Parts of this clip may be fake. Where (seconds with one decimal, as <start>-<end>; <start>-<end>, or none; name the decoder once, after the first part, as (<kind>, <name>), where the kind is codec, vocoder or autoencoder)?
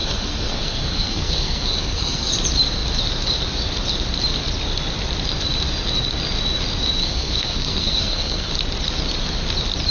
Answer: 0.0-2.3 (codec, SNAC); 7.0-8.5